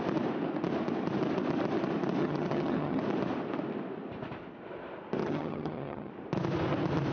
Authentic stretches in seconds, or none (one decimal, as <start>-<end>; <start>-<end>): 0.0-2.2; 3.0-5.2; 6.1-7.1